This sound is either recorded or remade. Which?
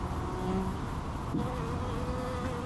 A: recorded